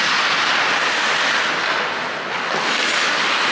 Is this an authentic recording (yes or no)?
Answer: yes